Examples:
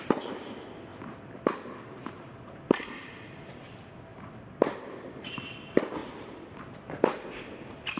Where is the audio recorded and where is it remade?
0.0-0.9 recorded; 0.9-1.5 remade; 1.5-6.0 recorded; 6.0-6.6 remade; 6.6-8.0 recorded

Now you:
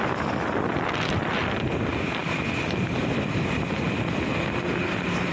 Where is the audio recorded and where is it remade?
0.0-5.3 recorded

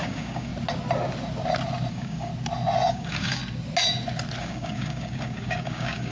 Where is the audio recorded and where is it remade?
0.0-0.5 remade; 0.5-1.9 recorded; 1.9-2.3 remade; 2.3-2.9 recorded; 2.9-3.4 remade; 3.4-4.4 recorded; 4.4-6.1 remade

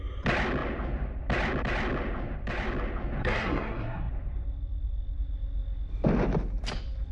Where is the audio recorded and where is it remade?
0.0-3.2 recorded; 3.2-4.1 remade; 4.1-7.1 recorded

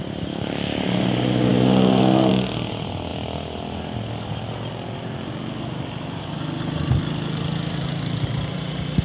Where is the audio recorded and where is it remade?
0.0-9.0 recorded

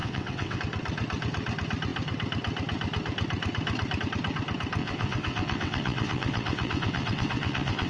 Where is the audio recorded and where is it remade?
0.0-0.6 remade; 0.6-4.8 recorded; 4.8-7.9 remade

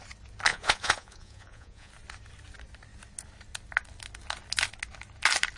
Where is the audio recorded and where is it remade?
0.0-0.5 recorded; 0.5-1.9 remade; 1.9-5.6 recorded